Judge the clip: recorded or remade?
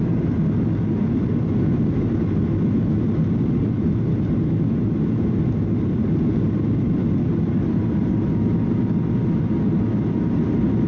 recorded